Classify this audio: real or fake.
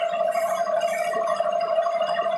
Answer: real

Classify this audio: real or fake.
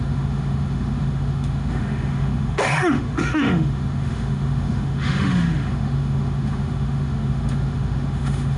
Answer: fake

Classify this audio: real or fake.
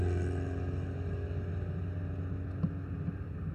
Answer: real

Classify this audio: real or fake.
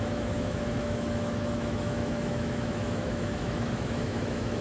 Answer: fake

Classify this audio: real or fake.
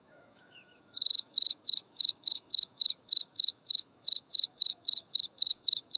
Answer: fake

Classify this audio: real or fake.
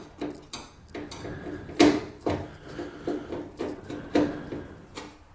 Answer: real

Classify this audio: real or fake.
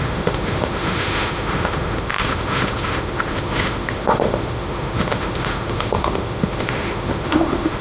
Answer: fake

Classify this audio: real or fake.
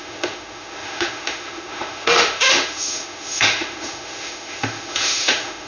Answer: fake